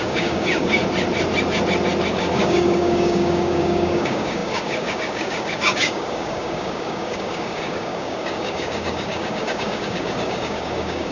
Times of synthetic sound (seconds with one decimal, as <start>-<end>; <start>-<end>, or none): 0.0-0.8; 2.1-11.1